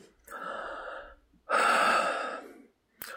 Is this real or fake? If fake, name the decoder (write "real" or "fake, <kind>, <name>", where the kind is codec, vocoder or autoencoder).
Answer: real